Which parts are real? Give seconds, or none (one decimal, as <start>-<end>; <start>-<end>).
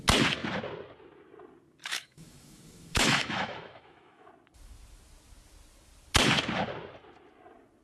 0.0-1.8; 4.3-7.8